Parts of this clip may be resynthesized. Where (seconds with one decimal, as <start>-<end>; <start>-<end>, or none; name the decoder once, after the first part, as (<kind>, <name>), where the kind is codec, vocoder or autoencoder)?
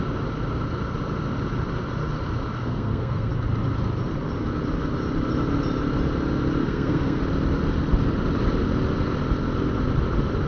2.6-3.3 (codec, SNAC); 6.6-7.2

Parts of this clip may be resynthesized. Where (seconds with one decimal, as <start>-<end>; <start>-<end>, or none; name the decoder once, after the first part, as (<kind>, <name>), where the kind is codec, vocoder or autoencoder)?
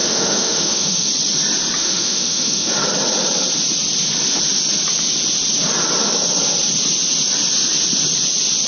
0.0-1.1 (autoencoder, DAC-VAE); 1.8-2.7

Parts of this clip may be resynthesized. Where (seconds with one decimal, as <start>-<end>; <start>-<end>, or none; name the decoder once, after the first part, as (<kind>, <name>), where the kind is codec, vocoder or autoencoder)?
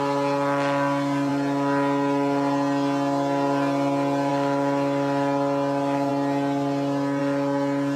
none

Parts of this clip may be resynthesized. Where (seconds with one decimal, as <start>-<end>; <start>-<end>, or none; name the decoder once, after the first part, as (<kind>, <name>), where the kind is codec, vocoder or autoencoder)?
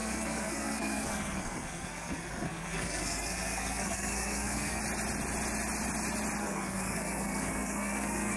0.0-4.8 (codec, SNAC); 6.4-8.4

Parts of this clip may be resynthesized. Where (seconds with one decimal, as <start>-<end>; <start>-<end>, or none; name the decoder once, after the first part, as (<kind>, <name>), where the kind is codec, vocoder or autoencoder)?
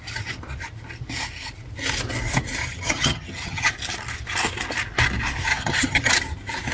2.6-3.7 (vocoder, HiFi-GAN); 5.5-6.1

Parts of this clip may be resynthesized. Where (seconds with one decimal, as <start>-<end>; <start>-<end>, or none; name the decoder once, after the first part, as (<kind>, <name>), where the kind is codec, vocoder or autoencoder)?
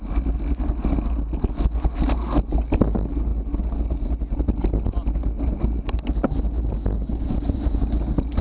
none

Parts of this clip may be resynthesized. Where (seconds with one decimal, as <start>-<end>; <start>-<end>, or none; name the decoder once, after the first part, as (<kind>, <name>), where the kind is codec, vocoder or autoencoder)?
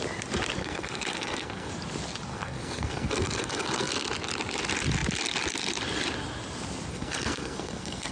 0.6-1.7 (codec, SNAC); 2.3-3.9; 6.9-8.1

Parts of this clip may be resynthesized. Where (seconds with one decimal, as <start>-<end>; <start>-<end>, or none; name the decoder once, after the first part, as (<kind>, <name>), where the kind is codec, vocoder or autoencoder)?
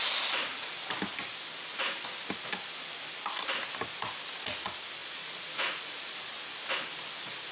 5.0-6.2 (vocoder, Vocos)